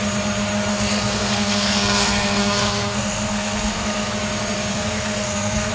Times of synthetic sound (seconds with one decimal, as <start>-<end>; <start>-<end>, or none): 0.7-4.1; 4.7-5.7